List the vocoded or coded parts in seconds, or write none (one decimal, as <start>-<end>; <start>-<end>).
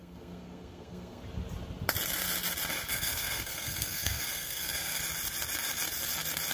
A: 0.0-1.2; 2.9-5.0